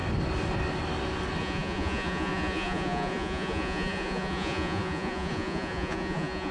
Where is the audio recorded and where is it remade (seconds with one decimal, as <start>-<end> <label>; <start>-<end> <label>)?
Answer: 0.0-1.4 recorded; 1.4-6.5 remade